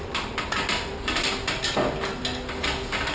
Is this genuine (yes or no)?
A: yes